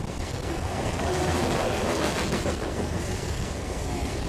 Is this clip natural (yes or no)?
no